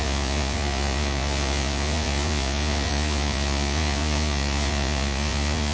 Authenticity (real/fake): fake